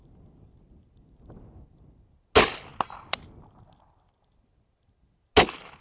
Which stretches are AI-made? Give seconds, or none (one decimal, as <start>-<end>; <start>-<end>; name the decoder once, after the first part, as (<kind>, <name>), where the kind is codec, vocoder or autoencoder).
none